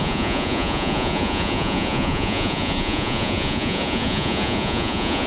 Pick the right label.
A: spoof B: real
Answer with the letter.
A